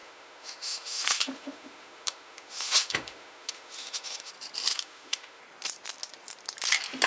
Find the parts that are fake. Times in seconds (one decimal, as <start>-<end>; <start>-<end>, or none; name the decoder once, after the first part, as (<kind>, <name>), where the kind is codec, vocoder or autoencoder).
0.0-4.3 (autoencoder, DAC-VAE); 4.7-5.4